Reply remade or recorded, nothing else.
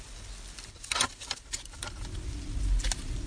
recorded